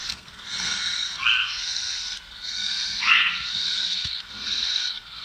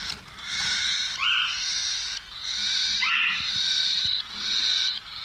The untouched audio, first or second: second